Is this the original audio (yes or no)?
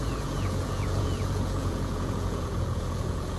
no